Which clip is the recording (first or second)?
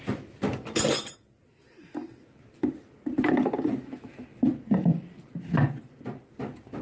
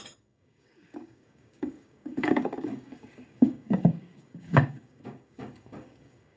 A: first